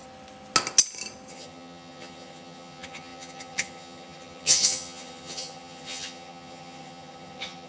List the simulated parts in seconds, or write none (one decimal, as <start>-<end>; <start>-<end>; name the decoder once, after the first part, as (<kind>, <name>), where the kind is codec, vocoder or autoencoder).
1.3-7.7 (vocoder, HiFi-GAN)